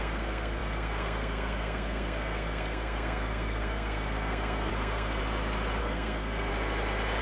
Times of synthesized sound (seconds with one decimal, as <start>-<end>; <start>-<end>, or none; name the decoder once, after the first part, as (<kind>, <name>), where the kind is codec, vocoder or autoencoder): 0.0-5.2 (codec, SNAC); 5.8-6.5

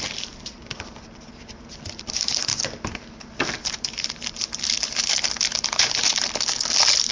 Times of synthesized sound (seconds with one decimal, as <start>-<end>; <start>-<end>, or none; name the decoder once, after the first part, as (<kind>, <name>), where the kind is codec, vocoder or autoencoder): none

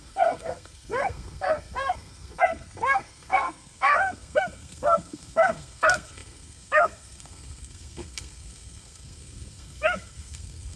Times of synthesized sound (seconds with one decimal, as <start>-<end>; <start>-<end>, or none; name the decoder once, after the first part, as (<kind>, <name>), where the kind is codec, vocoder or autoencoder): 0.0-10.8 (codec, SNAC)

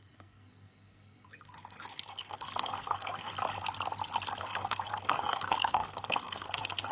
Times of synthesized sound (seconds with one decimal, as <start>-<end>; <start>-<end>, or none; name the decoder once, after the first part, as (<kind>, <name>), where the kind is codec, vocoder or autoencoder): 0.0-3.3 (codec, SNAC); 4.4-6.9

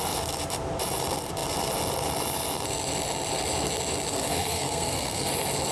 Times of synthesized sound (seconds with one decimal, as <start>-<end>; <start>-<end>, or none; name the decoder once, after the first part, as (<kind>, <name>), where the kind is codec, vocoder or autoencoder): 4.1-5.3 (codec, SNAC)

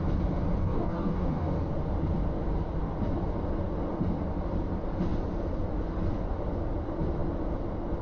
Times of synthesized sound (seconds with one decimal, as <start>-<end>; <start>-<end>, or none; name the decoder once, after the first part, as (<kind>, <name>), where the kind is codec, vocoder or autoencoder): 0.6-1.5 (codec, DAC)

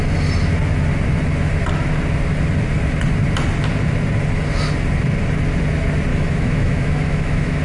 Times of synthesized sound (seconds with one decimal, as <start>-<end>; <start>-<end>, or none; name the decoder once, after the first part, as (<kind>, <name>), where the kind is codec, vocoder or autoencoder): 6.1-7.6 (autoencoder, DAC-VAE)

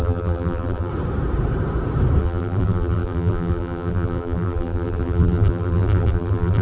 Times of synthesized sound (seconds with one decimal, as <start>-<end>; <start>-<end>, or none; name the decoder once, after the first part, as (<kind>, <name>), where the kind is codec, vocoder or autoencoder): 0.0-0.9 (vocoder, BigVGAN v2); 2.2-6.6